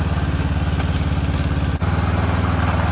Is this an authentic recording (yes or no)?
yes